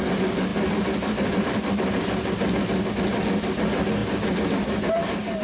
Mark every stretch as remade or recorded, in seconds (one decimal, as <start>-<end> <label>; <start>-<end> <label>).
0.0-5.4 recorded